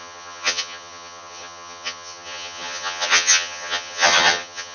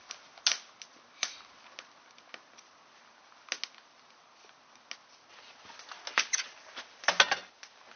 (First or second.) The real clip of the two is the second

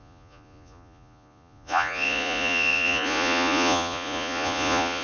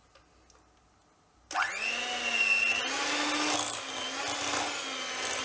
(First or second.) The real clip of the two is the second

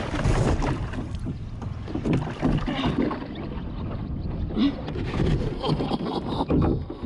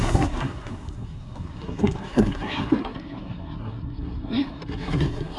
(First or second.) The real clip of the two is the first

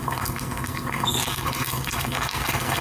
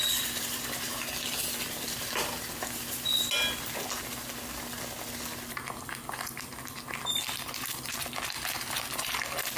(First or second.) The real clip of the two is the second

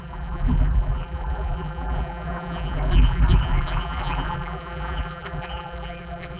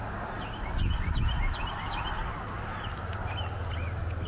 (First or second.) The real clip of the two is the second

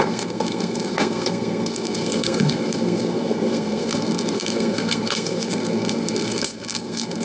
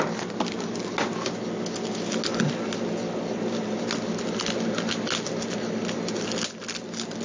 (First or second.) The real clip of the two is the second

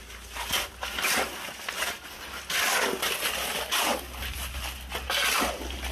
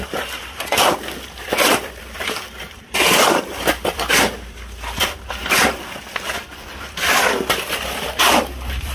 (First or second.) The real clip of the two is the first